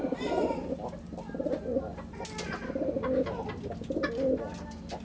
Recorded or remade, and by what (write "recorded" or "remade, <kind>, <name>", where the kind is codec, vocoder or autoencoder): recorded